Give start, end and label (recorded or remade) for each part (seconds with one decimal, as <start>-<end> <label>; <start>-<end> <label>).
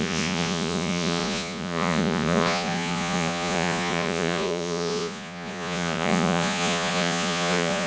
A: 0.0-7.9 remade